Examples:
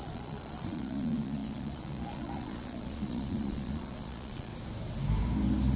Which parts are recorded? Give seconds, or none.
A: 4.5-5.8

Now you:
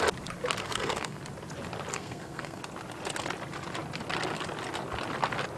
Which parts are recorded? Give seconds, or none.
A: 0.0-0.6; 1.2-1.9; 2.6-5.6